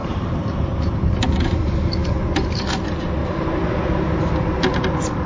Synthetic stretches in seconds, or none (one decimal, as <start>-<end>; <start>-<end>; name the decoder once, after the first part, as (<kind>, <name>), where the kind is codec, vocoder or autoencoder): 0.0-1.6 (vocoder, BigVGAN v2); 2.0-2.5; 3.2-3.7